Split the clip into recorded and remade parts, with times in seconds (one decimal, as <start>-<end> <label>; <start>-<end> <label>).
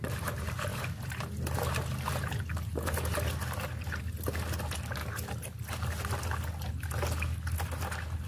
0.0-8.3 recorded